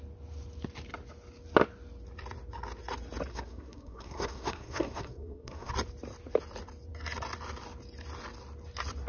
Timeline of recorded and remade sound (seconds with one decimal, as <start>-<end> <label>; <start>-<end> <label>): 0.0-3.3 recorded; 3.3-5.7 remade; 5.7-9.1 recorded